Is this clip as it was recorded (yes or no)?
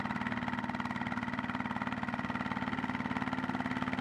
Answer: yes